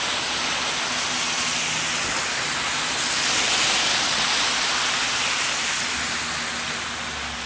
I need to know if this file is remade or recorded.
recorded